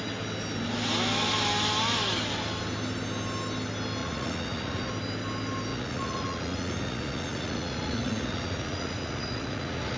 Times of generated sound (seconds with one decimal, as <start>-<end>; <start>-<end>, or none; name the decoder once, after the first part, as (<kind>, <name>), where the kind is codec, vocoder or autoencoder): 4.0-4.9 (vocoder, Vocos); 5.7-10.0